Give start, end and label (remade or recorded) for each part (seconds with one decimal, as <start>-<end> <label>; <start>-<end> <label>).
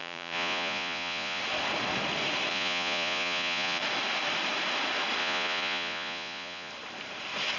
0.0-1.4 remade; 1.4-2.5 recorded; 2.5-3.8 remade; 3.8-5.2 recorded; 5.2-6.7 remade; 6.7-7.6 recorded